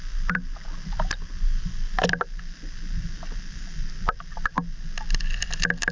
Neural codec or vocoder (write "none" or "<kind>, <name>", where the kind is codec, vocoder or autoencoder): none